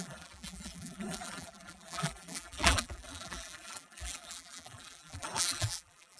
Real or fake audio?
fake